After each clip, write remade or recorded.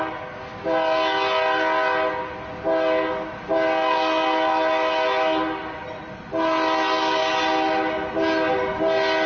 recorded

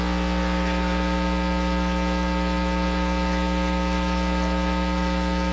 recorded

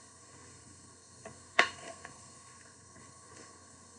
remade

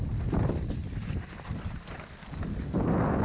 recorded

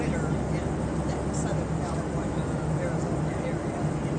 recorded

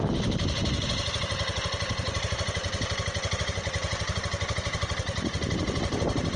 recorded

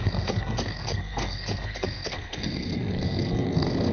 remade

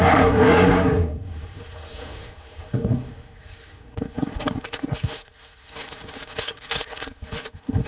remade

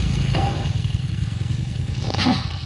remade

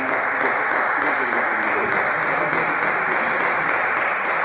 recorded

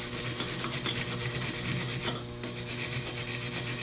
recorded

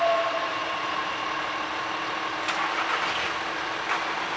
recorded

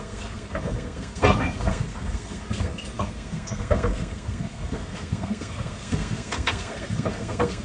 remade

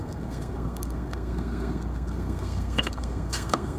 remade